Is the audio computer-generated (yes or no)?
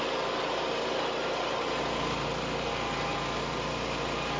no